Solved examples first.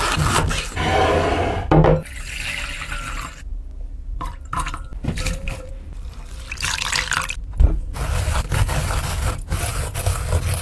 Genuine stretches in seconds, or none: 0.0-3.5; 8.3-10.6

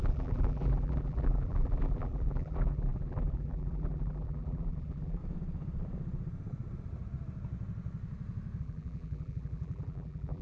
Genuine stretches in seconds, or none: 5.2-8.6